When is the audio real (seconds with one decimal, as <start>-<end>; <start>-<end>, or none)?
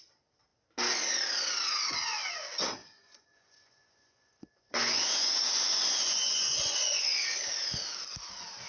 0.0-2.8; 7.4-8.7